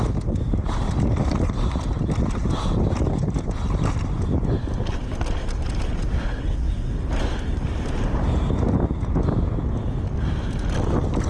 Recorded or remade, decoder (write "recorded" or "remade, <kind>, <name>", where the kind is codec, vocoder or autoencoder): recorded